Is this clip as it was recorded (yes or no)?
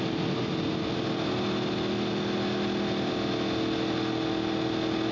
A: yes